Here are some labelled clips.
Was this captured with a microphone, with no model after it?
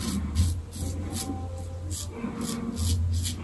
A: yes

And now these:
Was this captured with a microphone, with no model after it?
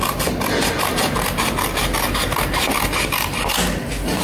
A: yes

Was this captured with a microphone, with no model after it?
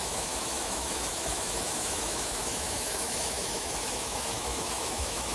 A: no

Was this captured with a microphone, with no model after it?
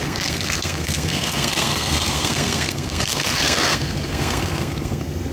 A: no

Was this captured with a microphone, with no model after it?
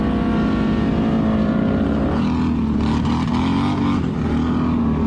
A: yes